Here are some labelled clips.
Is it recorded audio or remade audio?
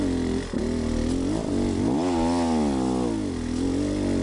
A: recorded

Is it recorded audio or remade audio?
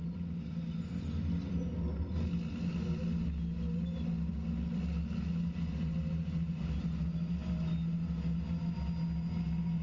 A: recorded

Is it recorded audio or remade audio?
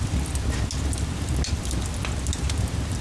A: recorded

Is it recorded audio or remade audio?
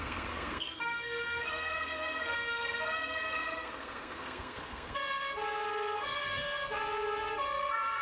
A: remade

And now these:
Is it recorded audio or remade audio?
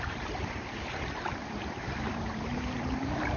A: remade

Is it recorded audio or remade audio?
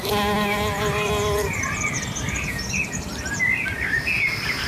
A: recorded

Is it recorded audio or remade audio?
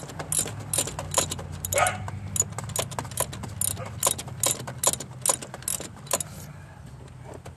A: recorded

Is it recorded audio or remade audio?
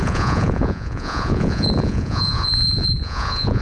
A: remade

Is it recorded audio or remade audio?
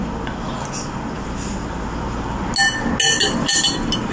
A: recorded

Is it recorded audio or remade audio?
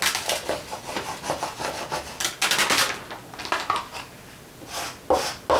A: recorded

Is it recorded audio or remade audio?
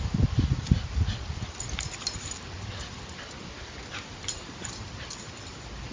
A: remade